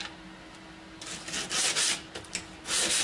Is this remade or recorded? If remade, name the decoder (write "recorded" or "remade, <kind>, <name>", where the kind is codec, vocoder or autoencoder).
recorded